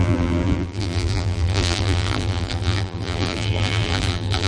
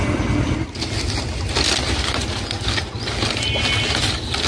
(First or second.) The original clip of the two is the second